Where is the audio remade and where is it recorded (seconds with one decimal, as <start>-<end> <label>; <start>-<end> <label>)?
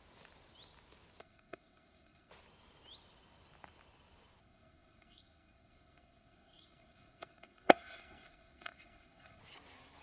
0.0-1.2 recorded; 1.2-2.3 remade; 2.3-4.4 recorded; 4.4-9.4 remade; 9.4-10.0 recorded